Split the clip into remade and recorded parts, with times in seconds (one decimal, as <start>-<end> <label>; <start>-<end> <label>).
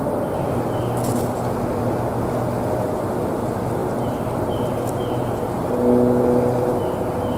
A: 0.0-7.4 recorded